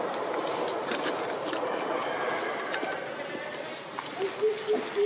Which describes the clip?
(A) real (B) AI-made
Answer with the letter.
A